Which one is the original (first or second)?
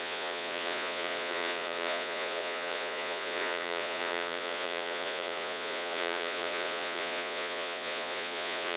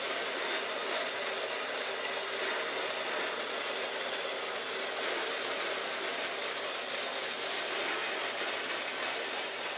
second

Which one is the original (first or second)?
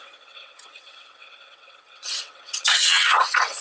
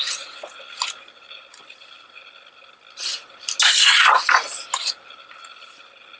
second